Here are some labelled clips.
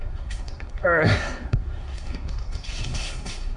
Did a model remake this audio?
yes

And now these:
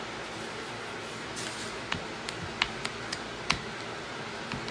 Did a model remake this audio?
no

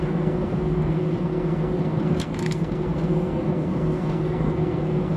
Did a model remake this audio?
yes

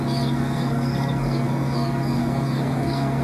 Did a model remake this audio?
yes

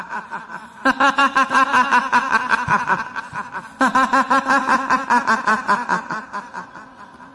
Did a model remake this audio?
no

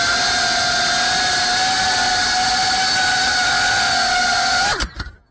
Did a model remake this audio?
no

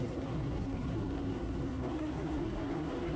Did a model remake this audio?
yes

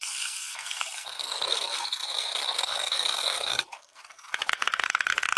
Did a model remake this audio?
yes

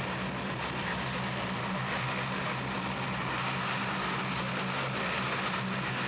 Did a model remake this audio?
no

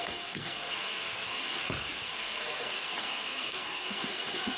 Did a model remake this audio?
yes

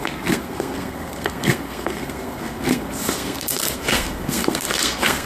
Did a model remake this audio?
yes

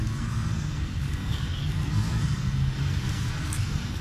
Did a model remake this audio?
yes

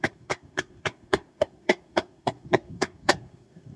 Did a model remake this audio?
yes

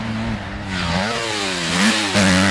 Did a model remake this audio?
no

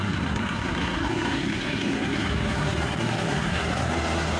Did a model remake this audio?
yes